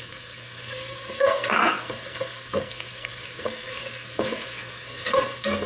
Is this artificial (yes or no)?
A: yes